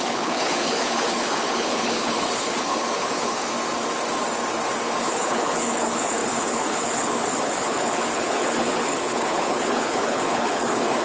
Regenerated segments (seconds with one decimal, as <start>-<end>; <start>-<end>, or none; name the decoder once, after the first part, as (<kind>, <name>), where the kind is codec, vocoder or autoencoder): 0.0-3.5 (codec, HILCodec); 5.0-11.0